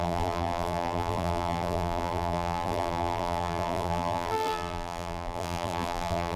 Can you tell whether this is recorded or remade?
remade